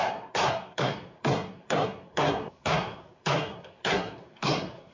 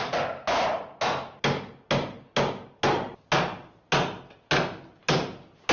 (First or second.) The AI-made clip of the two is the first